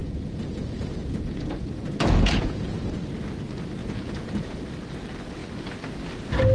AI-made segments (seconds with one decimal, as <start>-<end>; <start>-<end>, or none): 0.0-2.8; 3.8-4.7